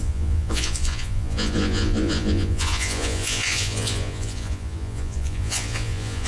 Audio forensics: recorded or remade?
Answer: remade